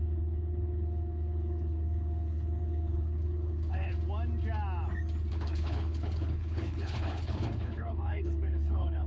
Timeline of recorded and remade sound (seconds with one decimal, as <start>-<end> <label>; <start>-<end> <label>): 0.0-3.9 remade; 3.9-5.3 recorded; 5.3-9.1 remade